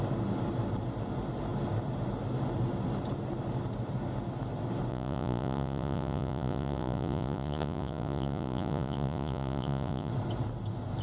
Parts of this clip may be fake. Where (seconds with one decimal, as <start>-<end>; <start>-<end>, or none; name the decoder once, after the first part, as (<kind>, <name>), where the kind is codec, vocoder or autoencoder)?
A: 4.9-10.1 (vocoder, Vocos)